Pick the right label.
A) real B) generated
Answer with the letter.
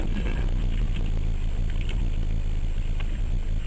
A